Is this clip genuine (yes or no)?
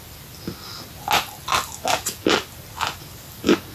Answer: yes